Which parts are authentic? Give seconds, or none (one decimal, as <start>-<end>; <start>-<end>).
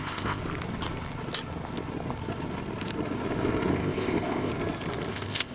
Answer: 0.4-3.7; 4.5-5.1